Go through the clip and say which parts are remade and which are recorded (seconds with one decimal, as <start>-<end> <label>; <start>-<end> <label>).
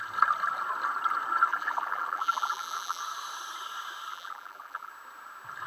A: 0.0-1.5 recorded; 1.5-3.0 remade; 3.0-4.1 recorded; 4.1-4.9 remade; 4.9-5.7 recorded